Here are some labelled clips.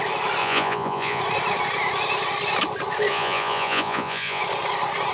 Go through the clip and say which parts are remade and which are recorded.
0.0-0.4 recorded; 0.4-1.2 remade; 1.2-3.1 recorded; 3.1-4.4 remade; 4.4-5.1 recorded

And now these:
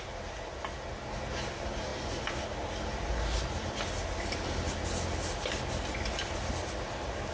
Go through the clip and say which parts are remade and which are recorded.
0.0-7.3 recorded

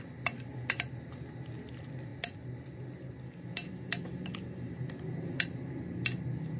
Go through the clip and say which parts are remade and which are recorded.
0.0-6.6 recorded

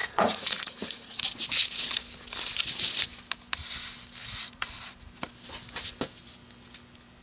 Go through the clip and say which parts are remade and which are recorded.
0.0-1.2 remade; 1.2-4.2 recorded; 4.2-4.7 remade; 4.7-7.2 recorded

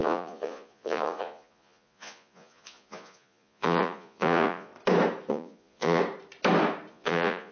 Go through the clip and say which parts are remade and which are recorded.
0.0-4.7 remade; 4.7-5.3 recorded; 5.3-6.0 remade; 6.0-6.9 recorded; 6.9-7.5 remade

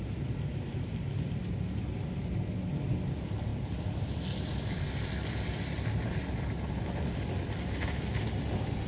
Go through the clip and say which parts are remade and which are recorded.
0.0-8.9 recorded

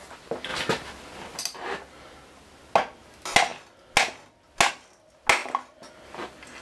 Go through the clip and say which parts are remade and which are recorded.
0.0-6.6 recorded